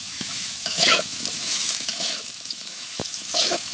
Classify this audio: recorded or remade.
remade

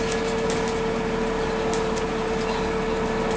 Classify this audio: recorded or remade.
recorded